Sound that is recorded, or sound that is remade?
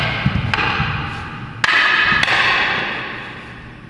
recorded